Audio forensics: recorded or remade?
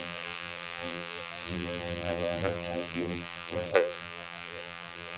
remade